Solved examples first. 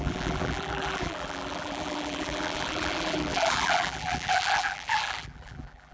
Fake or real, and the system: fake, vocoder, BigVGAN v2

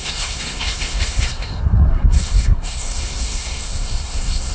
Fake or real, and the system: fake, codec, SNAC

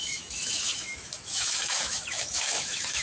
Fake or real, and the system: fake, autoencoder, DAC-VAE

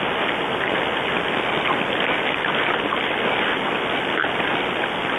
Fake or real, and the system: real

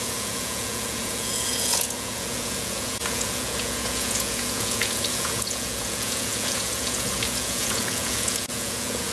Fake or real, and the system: fake, vocoder, Vocos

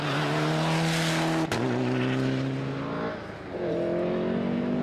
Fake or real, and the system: real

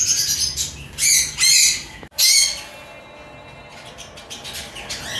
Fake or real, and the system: real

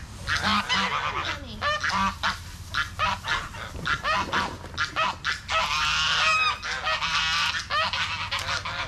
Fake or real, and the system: real